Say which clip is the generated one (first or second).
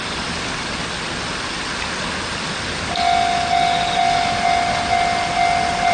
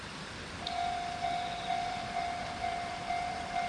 second